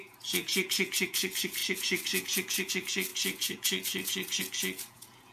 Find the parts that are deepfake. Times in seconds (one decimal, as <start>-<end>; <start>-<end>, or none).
0.0-5.3

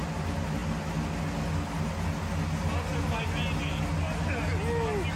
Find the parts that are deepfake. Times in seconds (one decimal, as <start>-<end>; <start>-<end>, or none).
none

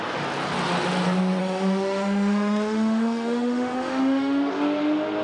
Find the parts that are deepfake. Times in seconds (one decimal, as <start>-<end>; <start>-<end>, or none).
1.4-4.5

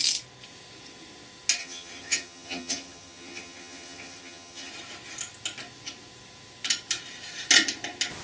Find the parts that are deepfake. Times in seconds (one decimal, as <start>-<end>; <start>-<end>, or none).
1.6-4.7